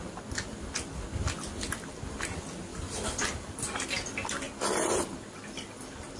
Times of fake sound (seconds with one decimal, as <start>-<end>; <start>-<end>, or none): none